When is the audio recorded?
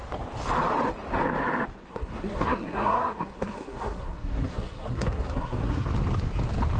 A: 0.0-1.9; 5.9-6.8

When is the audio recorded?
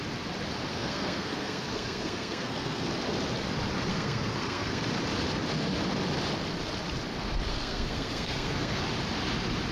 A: 0.0-0.7; 2.9-3.9; 4.8-7.5; 8.8-9.7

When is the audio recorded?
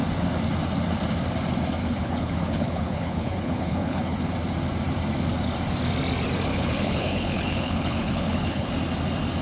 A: 0.0-1.8; 4.3-6.5; 8.7-9.4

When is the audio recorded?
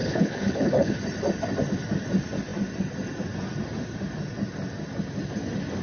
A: 1.0-5.8